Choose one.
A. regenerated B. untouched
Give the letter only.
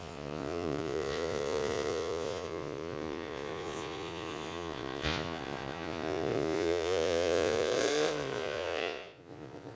A